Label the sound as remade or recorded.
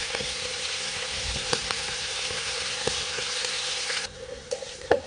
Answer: remade